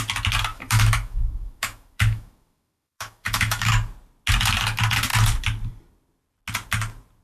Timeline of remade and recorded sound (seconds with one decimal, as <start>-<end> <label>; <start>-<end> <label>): 0.0-0.5 recorded; 0.5-3.7 remade; 3.7-7.2 recorded

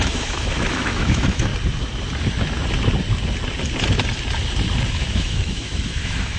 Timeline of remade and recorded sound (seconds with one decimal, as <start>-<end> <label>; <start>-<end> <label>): 0.0-1.5 remade; 1.5-4.9 recorded; 4.9-6.4 remade